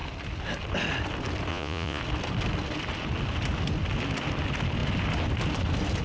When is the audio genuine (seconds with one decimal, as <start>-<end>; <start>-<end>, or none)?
0.0-1.5; 2.0-6.0